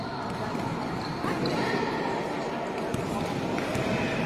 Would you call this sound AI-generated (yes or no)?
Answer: yes